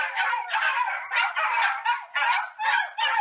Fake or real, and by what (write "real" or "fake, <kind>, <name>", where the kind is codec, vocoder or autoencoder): real